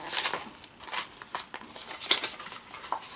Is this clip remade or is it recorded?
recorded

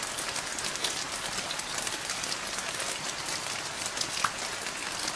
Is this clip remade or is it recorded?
recorded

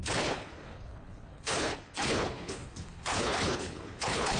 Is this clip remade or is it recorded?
remade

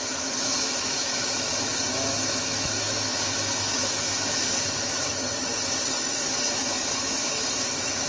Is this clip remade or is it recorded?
remade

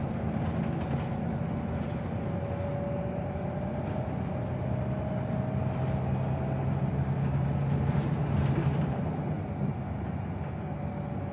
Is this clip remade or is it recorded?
recorded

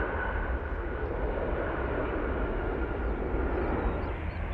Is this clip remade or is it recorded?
recorded